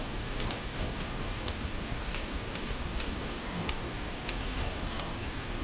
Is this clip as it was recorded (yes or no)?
no